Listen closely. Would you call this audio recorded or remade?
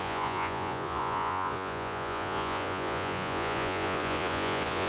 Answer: remade